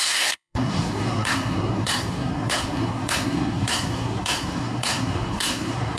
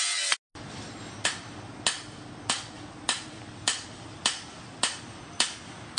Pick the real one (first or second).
second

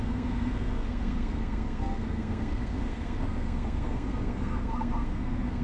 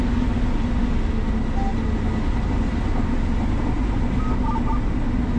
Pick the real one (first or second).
second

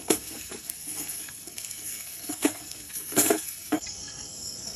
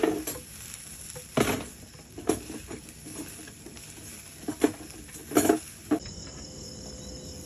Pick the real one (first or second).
second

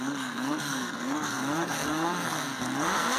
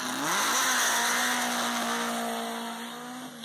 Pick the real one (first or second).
second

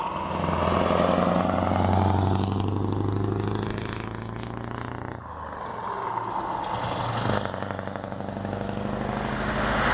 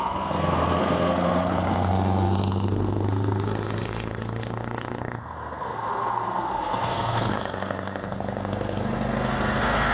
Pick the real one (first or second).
first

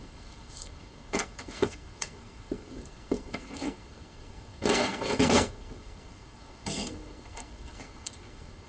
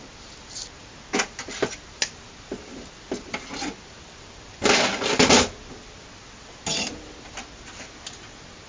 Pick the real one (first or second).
second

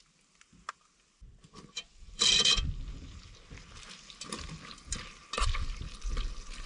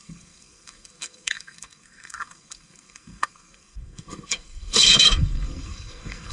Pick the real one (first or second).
first